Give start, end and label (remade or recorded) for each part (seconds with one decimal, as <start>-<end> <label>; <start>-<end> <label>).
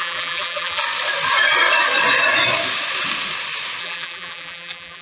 0.0-0.8 remade; 0.8-3.8 recorded; 3.8-5.0 remade